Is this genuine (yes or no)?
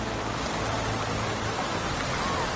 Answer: yes